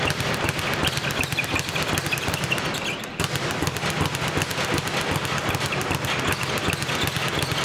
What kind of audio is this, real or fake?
real